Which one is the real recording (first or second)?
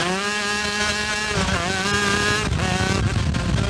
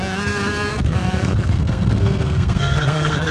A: first